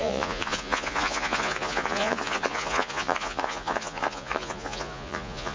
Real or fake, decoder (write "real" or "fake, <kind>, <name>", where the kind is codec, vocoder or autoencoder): fake, vocoder, Vocos